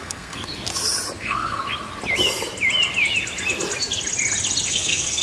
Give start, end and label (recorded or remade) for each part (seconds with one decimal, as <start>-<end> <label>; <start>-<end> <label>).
0.0-0.5 remade; 0.5-1.2 recorded; 1.2-1.6 remade; 1.6-4.7 recorded; 4.7-5.2 remade